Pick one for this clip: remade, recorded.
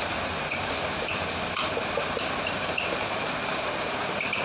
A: recorded